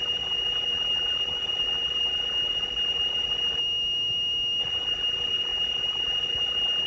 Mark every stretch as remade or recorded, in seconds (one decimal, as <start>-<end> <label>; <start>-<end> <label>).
0.0-3.6 remade; 3.6-4.6 recorded; 4.6-6.9 remade